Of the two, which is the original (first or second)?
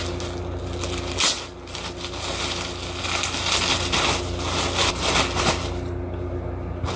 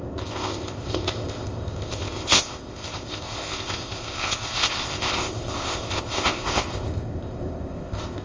first